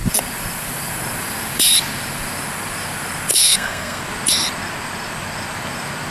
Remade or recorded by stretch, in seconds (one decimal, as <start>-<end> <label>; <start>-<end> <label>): 0.0-3.3 recorded; 3.3-4.0 remade; 4.0-6.1 recorded

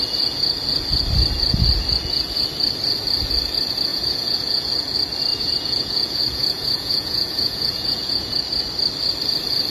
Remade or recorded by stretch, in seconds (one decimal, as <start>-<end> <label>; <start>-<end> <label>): 0.0-3.9 recorded; 3.9-4.7 remade; 4.7-5.3 recorded; 5.3-8.4 remade; 8.4-9.7 recorded

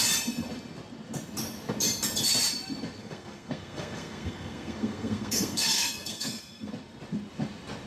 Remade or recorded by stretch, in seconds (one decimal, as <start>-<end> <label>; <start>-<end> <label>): 0.0-3.0 recorded; 3.0-6.7 remade; 6.7-7.9 recorded

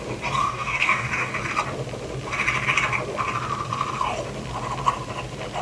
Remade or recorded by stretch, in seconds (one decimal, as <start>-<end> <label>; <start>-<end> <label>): 0.0-0.4 recorded; 0.4-1.3 remade; 1.3-5.6 recorded

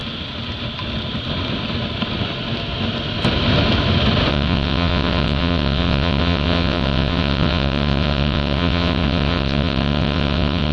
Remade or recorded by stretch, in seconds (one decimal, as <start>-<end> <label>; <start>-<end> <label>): 0.0-4.3 recorded; 4.3-10.7 remade

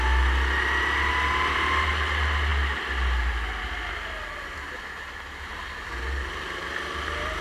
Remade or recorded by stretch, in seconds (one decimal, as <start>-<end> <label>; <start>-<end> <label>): 0.0-7.4 recorded

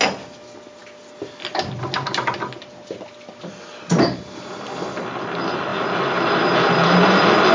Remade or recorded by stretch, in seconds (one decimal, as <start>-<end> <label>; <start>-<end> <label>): 0.0-7.5 recorded